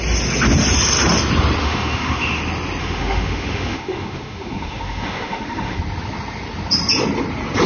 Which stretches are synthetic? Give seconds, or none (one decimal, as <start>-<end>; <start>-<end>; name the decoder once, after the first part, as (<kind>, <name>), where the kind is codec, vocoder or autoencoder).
1.6-2.4 (autoencoder, DAC-VAE); 2.8-5.8